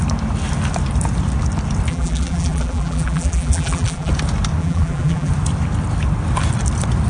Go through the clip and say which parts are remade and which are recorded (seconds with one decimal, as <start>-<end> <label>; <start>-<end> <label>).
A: 0.0-1.9 recorded; 1.9-4.1 remade; 4.1-4.6 recorded; 4.6-5.3 remade; 5.3-7.1 recorded